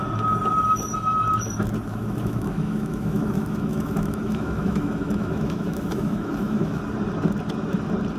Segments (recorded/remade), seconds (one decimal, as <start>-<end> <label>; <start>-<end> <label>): 0.0-1.9 recorded; 1.9-6.8 remade; 6.8-8.2 recorded